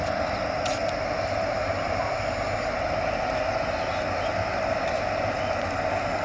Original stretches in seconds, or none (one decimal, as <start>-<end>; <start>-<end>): 0.0-6.2